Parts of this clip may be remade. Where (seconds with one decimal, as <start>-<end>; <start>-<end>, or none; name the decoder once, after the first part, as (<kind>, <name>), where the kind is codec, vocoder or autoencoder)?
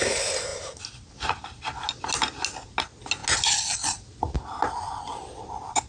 none